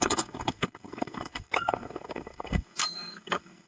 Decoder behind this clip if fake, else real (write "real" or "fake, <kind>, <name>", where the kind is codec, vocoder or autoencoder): fake, codec, SNAC